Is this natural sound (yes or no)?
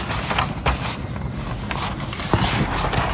yes